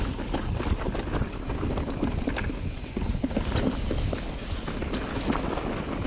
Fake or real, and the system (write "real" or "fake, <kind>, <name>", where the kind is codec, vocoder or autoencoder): real